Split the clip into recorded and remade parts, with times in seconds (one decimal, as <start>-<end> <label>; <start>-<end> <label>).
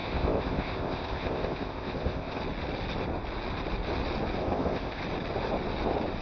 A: 0.0-2.4 remade; 2.4-4.4 recorded; 4.4-5.0 remade; 5.0-6.2 recorded